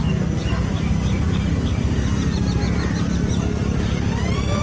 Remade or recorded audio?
recorded